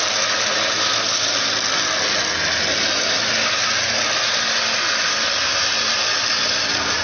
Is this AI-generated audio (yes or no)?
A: no